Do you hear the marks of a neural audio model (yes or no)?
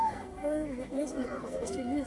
yes